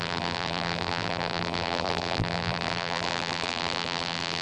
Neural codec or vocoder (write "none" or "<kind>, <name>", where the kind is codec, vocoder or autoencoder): vocoder, BigVGAN v2